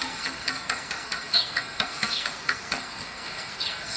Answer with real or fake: fake